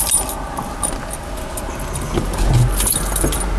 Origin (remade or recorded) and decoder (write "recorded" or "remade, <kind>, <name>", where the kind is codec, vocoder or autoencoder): recorded